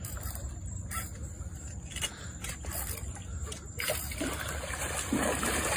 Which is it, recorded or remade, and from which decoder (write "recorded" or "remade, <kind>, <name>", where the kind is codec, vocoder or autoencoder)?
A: recorded